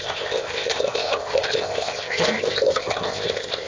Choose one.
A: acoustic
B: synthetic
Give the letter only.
B